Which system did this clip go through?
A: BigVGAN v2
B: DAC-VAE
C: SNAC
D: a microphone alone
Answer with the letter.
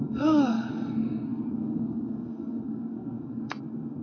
C